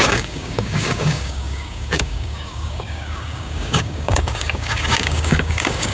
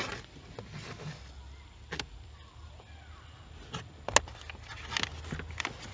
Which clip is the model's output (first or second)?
first